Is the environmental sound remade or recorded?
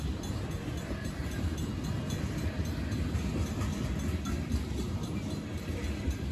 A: recorded